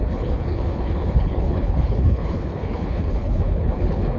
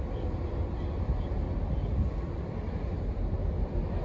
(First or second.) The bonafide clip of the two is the second